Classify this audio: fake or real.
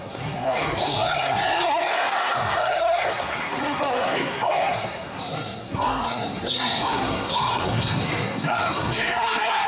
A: fake